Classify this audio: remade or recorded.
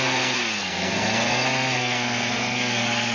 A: remade